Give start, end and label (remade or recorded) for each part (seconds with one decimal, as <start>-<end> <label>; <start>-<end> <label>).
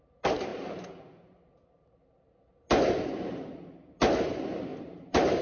0.0-0.5 recorded; 0.5-2.3 remade; 2.3-4.7 recorded; 4.7-5.4 remade